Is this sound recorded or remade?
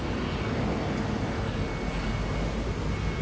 recorded